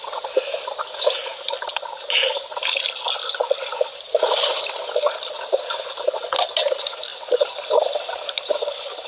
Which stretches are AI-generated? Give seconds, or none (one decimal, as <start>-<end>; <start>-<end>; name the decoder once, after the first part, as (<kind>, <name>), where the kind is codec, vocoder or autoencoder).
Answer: none